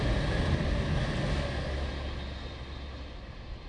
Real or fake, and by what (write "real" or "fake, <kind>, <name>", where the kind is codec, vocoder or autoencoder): real